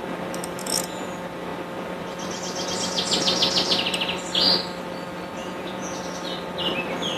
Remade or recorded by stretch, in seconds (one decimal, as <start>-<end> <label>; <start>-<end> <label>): 0.0-0.6 recorded; 0.6-1.1 remade; 1.1-5.4 recorded; 5.4-6.0 remade; 6.0-7.2 recorded